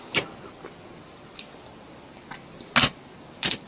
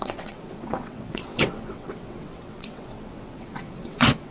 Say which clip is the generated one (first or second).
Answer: second